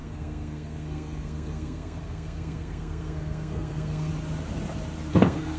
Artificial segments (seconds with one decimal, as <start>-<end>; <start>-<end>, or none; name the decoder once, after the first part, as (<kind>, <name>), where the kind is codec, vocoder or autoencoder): 0.0-4.1 (codec, SNAC); 5.1-5.6